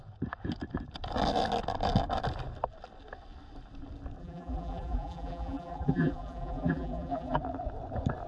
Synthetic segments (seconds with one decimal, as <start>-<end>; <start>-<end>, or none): 4.2-7.4